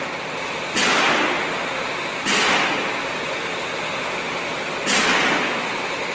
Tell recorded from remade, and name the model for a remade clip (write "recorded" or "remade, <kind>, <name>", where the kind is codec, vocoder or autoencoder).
recorded